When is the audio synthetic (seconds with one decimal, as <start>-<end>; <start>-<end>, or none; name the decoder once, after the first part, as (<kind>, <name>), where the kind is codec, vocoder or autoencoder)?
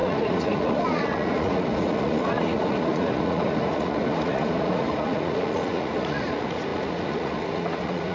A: 0.0-8.1 (vocoder, Vocos)